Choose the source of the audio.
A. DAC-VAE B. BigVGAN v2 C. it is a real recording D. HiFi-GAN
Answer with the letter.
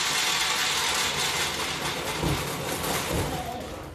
C